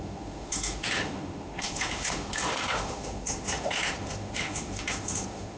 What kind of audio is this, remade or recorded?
remade